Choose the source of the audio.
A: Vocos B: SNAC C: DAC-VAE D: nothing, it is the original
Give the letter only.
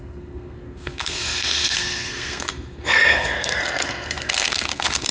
B